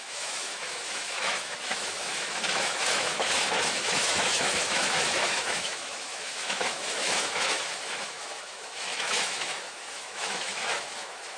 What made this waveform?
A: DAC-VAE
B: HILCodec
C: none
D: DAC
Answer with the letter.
A